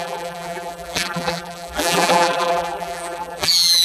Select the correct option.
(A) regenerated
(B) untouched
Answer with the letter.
A